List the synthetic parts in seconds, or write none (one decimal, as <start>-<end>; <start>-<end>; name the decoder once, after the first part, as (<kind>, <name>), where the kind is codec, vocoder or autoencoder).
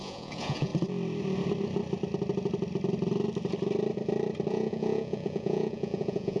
0.0-0.7 (vocoder, Vocos); 4.5-6.4